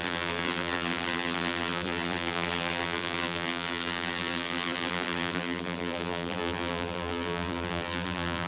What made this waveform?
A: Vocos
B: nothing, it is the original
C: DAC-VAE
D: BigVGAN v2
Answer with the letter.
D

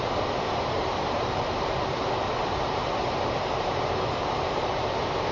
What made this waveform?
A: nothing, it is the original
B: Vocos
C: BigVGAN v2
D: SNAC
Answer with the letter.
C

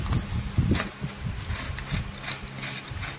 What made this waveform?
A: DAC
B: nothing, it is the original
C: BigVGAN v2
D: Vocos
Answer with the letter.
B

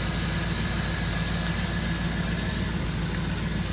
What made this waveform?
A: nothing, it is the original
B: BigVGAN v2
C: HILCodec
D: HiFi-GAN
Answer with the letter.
A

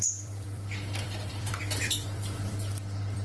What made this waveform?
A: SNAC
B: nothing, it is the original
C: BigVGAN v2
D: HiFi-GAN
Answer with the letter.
C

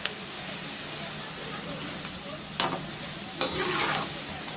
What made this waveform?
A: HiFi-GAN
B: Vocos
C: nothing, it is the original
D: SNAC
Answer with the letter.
C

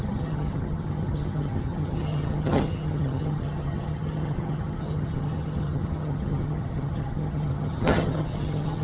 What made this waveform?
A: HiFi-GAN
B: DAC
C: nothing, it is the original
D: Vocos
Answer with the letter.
A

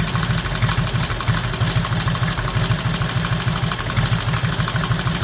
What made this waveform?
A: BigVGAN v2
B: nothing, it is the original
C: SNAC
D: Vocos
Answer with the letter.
B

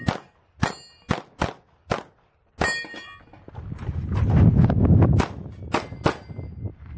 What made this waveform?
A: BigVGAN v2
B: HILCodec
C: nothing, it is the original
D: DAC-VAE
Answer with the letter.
C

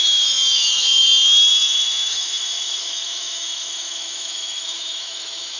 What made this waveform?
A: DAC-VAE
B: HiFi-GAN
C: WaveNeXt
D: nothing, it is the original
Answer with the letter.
A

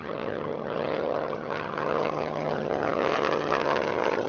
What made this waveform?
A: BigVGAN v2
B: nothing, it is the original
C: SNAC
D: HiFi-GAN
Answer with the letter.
D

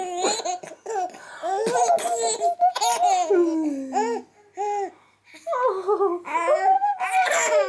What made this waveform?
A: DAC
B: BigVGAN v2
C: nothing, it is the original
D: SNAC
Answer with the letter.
C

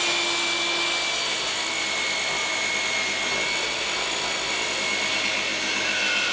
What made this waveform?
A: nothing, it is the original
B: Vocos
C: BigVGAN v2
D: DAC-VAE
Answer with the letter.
A